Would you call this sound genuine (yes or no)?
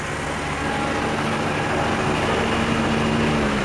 yes